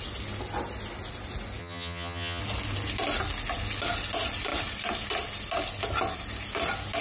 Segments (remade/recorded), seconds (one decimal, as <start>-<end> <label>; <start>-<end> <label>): 0.0-1.6 recorded; 1.6-2.4 remade; 2.4-7.0 recorded